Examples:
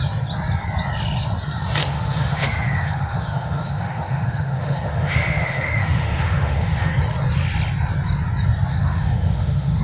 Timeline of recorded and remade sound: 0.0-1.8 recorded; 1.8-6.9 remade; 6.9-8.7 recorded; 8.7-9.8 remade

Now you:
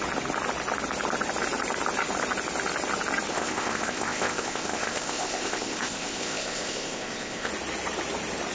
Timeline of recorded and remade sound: 0.0-3.3 recorded; 3.3-7.5 remade; 7.5-8.5 recorded

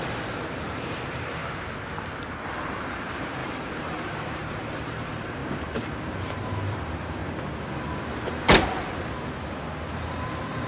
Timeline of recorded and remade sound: 0.0-1.4 remade; 1.4-2.6 recorded; 2.6-7.2 remade; 7.2-9.9 recorded; 9.9-10.7 remade

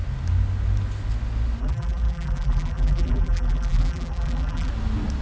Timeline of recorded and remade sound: 0.0-1.6 recorded; 1.6-4.7 remade; 4.7-5.2 recorded

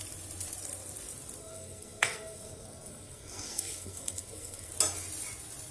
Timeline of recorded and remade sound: 0.0-1.4 recorded; 1.4-4.7 remade; 4.7-5.7 recorded

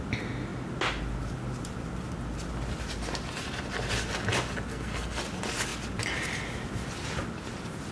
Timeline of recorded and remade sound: 0.0-4.7 recorded; 4.7-5.2 remade; 5.2-7.9 recorded

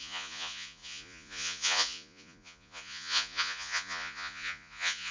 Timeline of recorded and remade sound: 0.0-5.1 remade

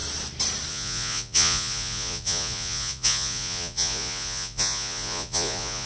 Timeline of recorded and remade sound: 0.0-0.7 recorded; 0.7-5.9 remade